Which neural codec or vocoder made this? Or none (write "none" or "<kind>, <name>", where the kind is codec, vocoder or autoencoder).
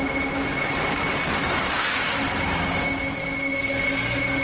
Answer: none